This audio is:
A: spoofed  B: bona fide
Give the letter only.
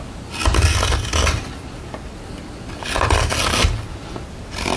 B